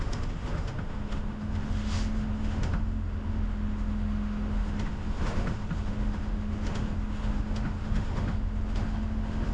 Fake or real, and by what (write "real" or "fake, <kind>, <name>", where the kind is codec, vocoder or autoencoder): fake, autoencoder, DAC-VAE